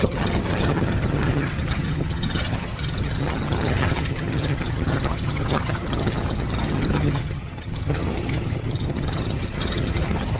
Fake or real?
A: fake